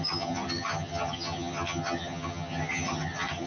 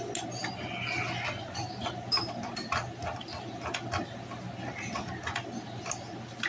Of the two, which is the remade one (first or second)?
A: first